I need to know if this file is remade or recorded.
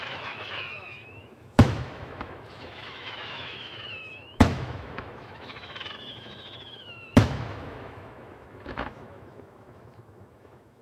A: remade